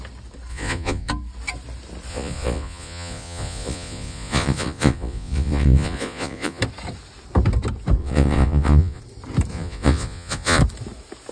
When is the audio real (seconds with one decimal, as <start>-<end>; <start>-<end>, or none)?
0.0-0.5; 1.1-2.1; 6.6-8.0; 9.0-9.5; 10.6-11.3